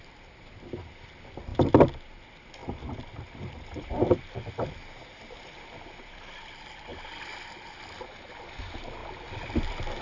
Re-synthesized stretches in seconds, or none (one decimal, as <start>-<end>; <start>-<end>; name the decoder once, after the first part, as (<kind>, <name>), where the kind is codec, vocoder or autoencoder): 0.0-1.5 (vocoder, BigVGAN v2); 2.1-6.9; 8.6-10.0